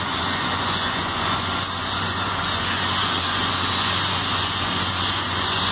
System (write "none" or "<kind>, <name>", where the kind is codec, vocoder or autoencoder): vocoder, Vocos